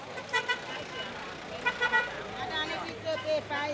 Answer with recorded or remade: recorded